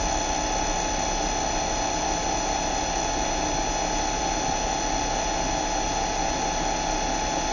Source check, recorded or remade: recorded